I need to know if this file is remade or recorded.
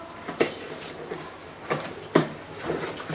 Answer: remade